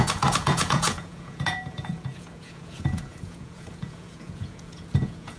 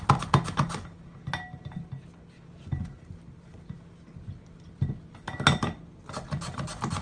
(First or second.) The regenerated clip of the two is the first